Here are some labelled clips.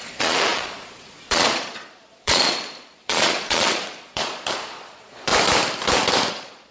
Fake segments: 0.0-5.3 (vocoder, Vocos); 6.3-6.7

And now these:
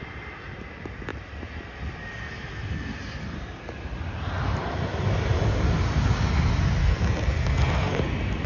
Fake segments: 6.8-8.0 (codec, SNAC)

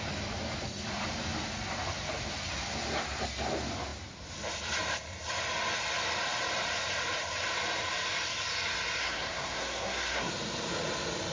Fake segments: 9.0-10.3 (codec, SNAC)

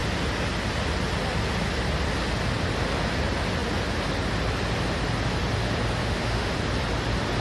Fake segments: 6.0-6.5 (autoencoder, DAC-VAE)

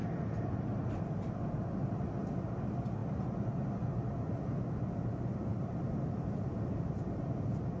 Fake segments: 0.0-1.0 (vocoder, BigVGAN v2); 3.0-3.7; 5.5-7.2

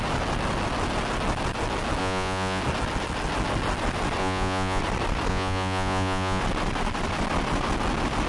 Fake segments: 2.0-2.6 (vocoder, Vocos); 4.2-4.8; 5.3-6.4

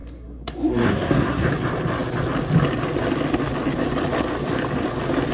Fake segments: 0.0-1.5 (codec, SNAC)